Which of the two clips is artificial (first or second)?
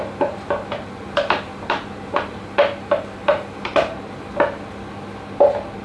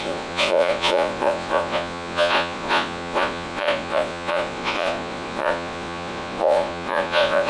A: second